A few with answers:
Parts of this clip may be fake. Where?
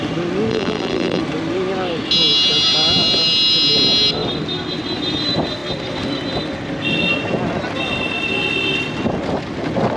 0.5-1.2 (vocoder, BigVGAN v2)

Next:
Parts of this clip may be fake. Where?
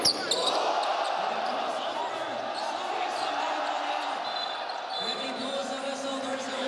0.0-2.0 (vocoder, BigVGAN v2); 3.7-5.6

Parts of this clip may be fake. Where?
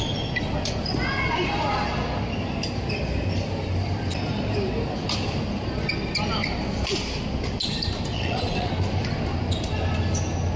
8.1-8.7 (vocoder, WaveNeXt)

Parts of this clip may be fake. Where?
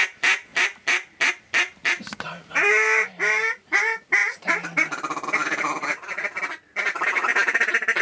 0.5-2.6 (vocoder, BigVGAN v2)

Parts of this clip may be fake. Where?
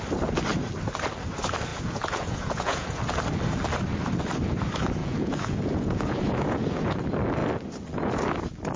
1.7-3.0 (vocoder, Vocos); 5.0-7.0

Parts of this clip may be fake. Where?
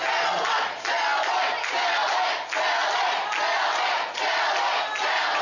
none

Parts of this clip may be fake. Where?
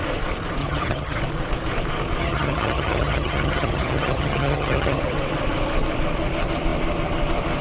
0.6-1.2 (vocoder, HiFi-GAN); 2.2-5.0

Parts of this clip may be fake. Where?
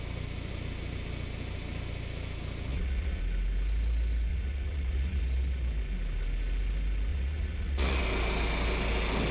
2.7-3.2 (vocoder, Vocos); 4.3-5.2; 7.1-8.0